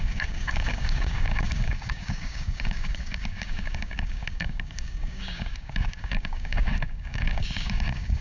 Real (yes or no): no